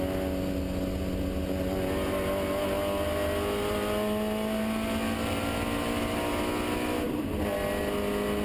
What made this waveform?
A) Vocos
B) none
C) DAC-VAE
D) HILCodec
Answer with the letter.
B